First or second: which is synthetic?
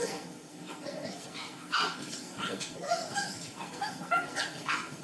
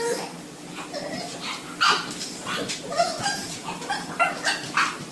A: first